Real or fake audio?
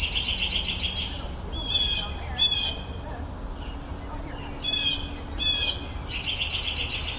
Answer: real